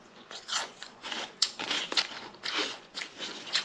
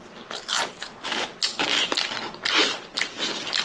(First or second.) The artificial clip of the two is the first